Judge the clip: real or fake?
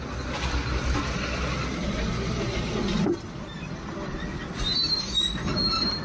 real